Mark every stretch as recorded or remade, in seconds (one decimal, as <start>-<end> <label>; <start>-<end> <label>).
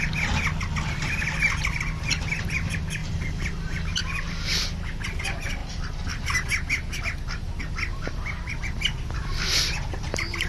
0.0-3.0 recorded; 3.0-4.0 remade; 4.0-7.9 recorded; 7.9-8.8 remade; 8.8-10.5 recorded